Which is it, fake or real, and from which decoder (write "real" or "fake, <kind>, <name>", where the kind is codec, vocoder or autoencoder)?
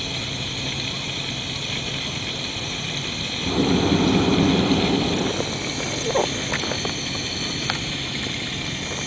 real